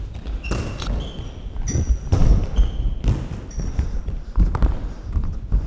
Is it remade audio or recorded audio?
recorded